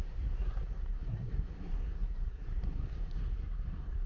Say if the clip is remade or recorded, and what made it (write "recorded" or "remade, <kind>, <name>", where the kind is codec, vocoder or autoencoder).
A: remade, codec, SNAC